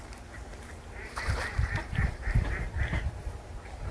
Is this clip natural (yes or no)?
no